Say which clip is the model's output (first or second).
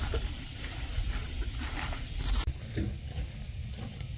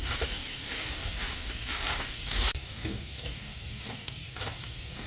second